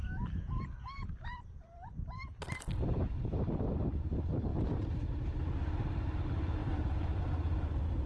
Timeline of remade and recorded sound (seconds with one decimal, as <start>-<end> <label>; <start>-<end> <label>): 0.0-3.3 remade; 3.3-6.6 recorded; 6.6-8.1 remade